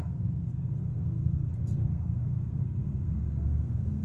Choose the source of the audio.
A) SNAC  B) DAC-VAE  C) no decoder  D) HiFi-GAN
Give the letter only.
A